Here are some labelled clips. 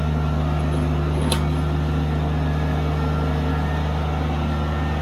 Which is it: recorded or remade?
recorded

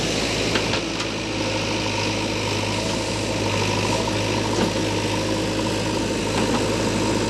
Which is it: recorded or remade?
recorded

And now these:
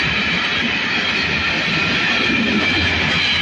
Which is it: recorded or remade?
recorded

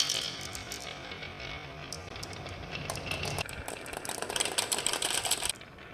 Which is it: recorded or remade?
remade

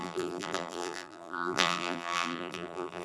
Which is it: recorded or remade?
remade